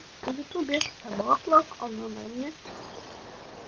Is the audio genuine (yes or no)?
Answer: yes